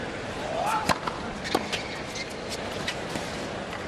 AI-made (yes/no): no